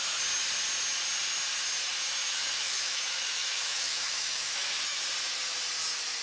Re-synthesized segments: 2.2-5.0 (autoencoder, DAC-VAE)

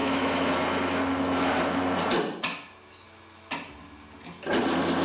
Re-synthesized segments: 0.0-0.5 (autoencoder, DAC-VAE)